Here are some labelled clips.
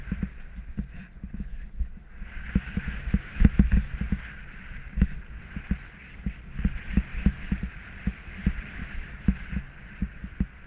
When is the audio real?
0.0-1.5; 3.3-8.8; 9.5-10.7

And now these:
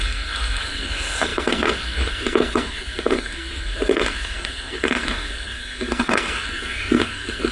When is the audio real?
none

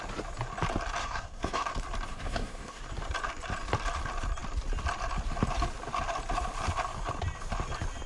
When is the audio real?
0.0-1.0; 1.7-2.1; 2.8-8.1

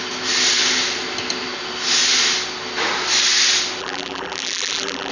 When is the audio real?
0.0-3.8

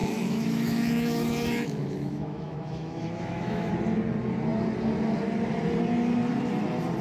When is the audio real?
3.7-7.0

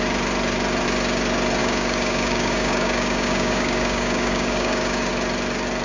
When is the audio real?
0.0-1.6; 5.1-5.8

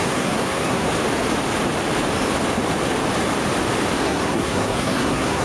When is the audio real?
0.9-4.0